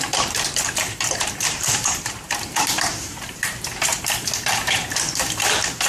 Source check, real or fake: fake